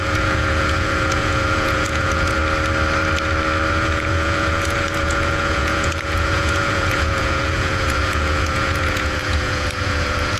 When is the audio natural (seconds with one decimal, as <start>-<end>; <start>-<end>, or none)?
2.4-3.7